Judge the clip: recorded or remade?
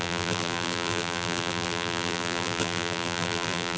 remade